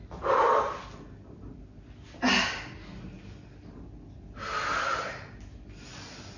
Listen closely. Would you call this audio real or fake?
real